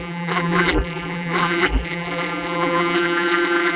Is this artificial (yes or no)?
yes